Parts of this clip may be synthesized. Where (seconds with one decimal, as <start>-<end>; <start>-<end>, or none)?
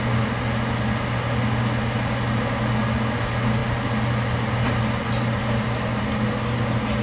none